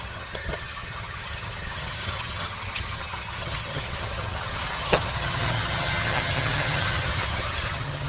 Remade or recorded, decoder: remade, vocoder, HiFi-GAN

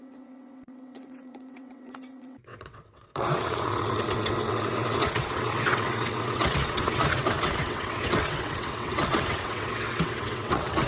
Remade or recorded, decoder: remade, vocoder, WaveNeXt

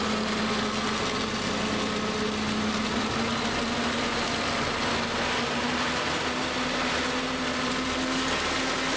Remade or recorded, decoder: recorded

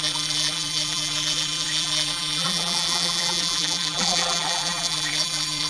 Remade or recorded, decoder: remade, vocoder, BigVGAN v2